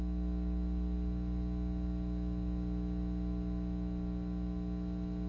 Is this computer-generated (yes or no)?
no